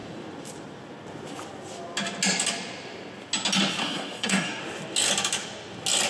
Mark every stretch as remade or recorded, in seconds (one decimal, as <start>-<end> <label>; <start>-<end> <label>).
0.0-3.8 recorded; 3.8-4.6 remade; 4.6-6.1 recorded